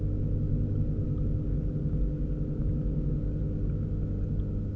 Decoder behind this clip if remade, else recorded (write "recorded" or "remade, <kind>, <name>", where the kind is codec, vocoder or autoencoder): recorded